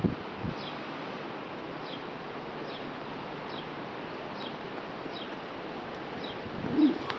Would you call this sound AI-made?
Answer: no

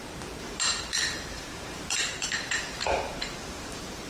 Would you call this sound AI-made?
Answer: yes